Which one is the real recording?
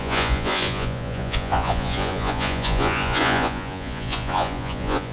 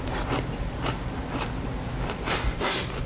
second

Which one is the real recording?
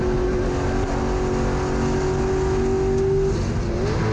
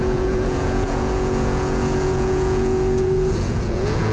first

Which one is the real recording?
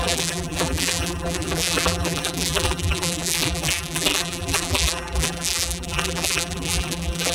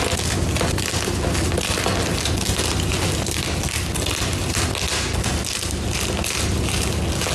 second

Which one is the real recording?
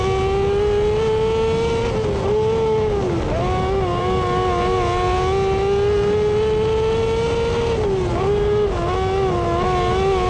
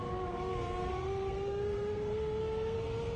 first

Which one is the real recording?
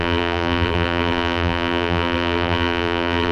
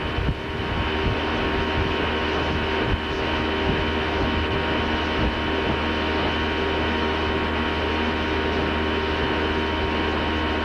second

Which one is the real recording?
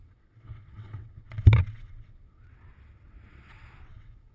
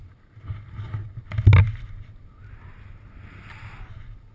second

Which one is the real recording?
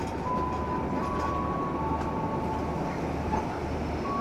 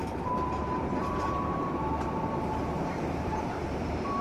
first